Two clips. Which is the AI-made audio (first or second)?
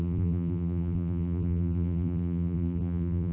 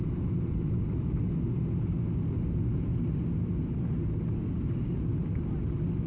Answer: first